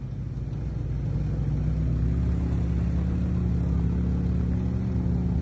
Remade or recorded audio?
recorded